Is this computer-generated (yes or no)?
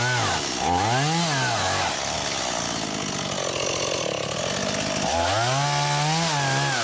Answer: no